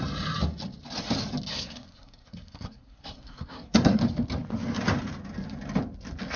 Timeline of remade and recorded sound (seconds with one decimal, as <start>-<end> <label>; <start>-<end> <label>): 0.0-1.5 recorded; 1.5-4.0 remade; 4.0-6.4 recorded